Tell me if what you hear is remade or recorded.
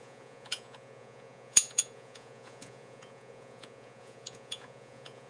remade